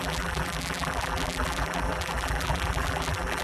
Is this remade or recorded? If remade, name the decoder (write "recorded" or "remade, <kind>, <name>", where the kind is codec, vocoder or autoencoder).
remade, vocoder, BigVGAN v2